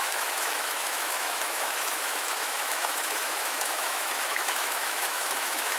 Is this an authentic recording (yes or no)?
no